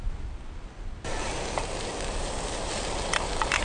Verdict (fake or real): real